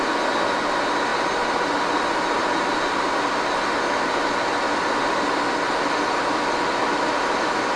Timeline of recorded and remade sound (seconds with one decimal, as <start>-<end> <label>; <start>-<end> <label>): 0.0-7.8 recorded